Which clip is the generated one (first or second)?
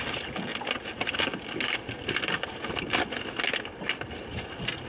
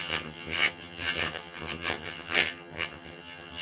second